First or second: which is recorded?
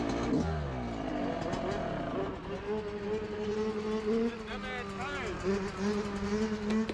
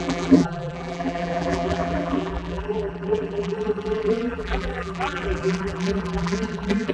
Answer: first